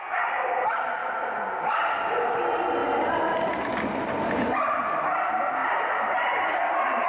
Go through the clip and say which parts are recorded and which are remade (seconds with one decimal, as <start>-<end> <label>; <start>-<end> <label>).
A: 0.0-1.0 recorded; 1.0-1.7 remade; 1.7-2.8 recorded; 2.8-5.0 remade; 5.0-5.6 recorded; 5.6-7.1 remade

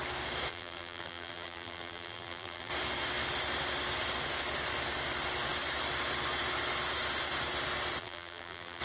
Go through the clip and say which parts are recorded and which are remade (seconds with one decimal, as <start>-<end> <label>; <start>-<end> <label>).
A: 0.0-0.5 recorded; 0.5-2.7 remade; 2.7-8.0 recorded; 8.0-8.8 remade